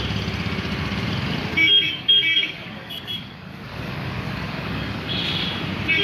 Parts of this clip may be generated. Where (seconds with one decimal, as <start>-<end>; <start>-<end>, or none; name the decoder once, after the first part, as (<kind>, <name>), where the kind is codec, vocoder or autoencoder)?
1.5-5.1 (codec, DAC)